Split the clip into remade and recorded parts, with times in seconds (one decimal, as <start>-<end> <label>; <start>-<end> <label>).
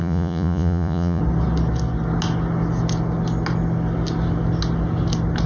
0.0-1.2 remade; 1.2-5.5 recorded